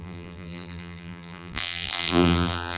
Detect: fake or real fake